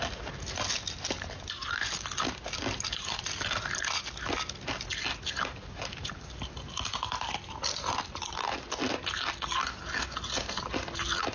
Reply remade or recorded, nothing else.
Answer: recorded